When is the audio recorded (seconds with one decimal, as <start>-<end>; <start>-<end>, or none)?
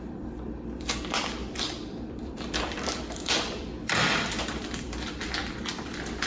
none